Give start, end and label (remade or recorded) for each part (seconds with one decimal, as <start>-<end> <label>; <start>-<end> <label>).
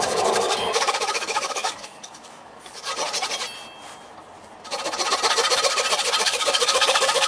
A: 0.0-2.9 remade; 2.9-6.2 recorded; 6.2-7.3 remade